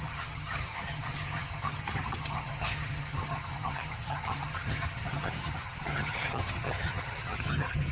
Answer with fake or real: fake